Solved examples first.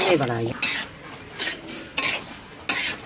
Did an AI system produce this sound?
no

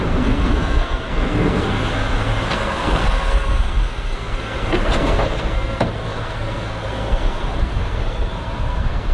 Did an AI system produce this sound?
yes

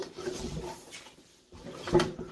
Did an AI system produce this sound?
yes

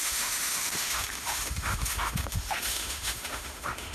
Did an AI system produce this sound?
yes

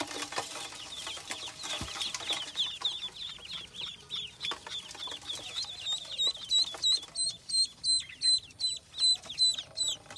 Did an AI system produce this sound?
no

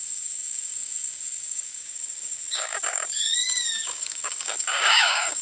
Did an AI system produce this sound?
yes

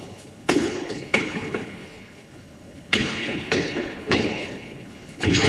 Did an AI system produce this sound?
yes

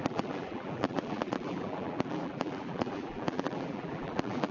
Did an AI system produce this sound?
yes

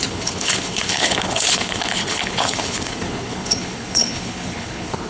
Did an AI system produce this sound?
yes